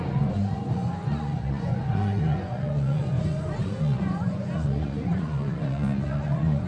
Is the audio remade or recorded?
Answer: remade